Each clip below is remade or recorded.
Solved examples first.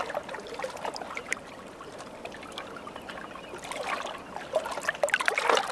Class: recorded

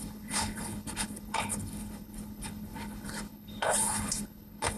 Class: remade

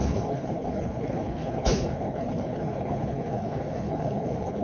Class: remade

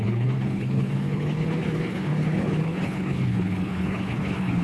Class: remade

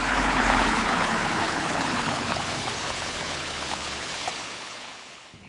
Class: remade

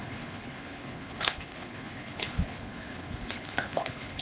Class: remade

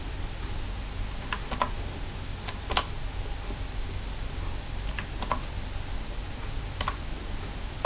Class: recorded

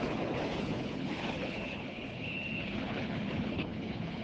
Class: remade